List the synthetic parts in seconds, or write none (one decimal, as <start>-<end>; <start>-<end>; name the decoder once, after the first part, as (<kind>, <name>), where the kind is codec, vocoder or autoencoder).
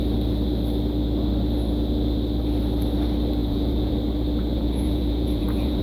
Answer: 3.4-3.9 (vocoder, Vocos); 4.5-5.8